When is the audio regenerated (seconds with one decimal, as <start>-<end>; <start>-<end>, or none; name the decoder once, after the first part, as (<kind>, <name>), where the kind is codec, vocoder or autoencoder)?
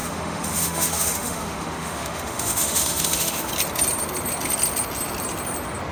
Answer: 0.0-3.5 (autoencoder, DAC-VAE)